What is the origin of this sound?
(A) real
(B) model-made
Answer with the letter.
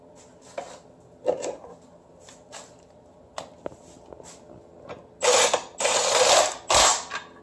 A